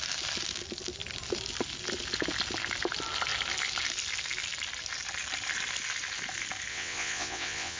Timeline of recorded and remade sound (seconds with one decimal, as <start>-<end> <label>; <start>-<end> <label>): 0.0-6.7 recorded; 6.7-7.8 remade

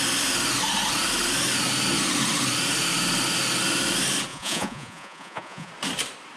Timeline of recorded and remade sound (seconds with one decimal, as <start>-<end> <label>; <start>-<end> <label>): 0.0-4.3 recorded; 4.3-5.7 remade; 5.7-6.4 recorded

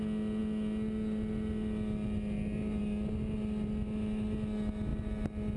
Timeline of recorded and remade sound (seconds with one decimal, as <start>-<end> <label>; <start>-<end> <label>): 0.0-5.6 recorded

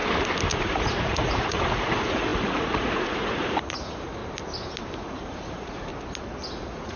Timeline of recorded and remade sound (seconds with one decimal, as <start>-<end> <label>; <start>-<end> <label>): 0.0-0.5 recorded; 0.5-4.2 remade; 4.2-5.0 recorded; 5.0-5.9 remade; 5.9-6.5 recorded; 6.5-7.0 remade

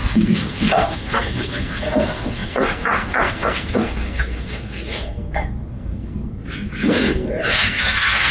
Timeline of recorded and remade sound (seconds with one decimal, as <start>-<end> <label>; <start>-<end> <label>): 0.0-8.3 remade

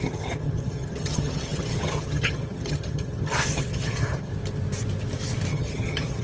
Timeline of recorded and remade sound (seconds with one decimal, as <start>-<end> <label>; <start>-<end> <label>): 0.0-4.3 remade; 4.3-5.5 recorded; 5.5-6.2 remade